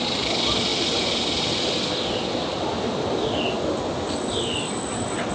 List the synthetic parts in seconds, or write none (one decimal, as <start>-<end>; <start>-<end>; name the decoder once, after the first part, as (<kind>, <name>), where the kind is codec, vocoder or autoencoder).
none